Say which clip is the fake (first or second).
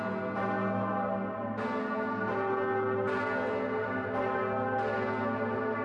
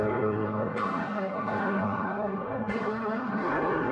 second